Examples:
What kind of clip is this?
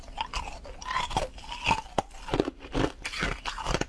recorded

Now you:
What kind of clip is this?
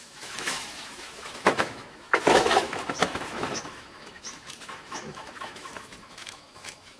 remade